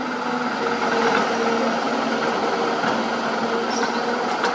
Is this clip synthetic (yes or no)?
no